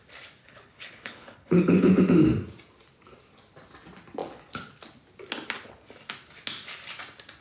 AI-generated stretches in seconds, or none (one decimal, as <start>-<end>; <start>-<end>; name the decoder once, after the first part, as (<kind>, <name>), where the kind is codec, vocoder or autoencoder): 0.4-2.0 (codec, HILCodec)